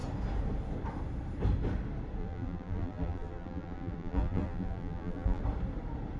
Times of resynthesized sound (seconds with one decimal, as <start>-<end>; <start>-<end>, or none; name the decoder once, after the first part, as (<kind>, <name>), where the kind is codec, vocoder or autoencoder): 2.2-5.4 (vocoder, BigVGAN v2)